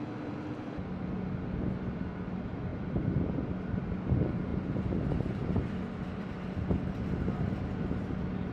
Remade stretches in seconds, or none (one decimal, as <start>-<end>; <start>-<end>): 2.7-3.4; 4.5-7.6